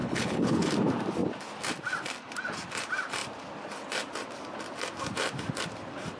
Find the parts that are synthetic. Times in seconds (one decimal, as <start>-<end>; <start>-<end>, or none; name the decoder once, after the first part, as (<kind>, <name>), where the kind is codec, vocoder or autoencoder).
0.0-0.6 (codec, HILCodec)